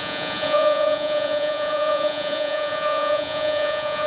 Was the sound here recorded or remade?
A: remade